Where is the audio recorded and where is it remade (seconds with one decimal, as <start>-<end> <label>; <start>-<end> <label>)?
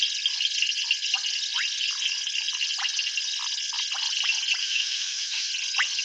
0.0-4.6 recorded; 4.6-5.5 remade; 5.5-6.0 recorded